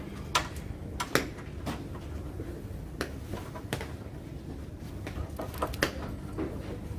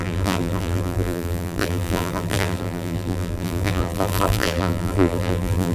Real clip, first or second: first